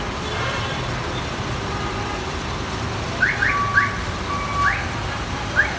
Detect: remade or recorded recorded